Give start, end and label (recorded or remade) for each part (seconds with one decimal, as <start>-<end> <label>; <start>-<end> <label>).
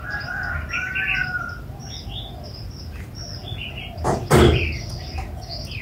0.0-5.8 recorded